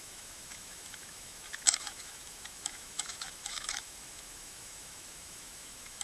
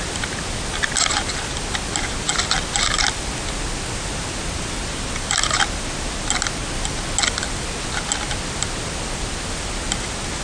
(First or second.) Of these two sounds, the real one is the second